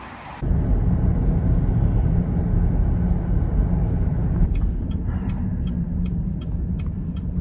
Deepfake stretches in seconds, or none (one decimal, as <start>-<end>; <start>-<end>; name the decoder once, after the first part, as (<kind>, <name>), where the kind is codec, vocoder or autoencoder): none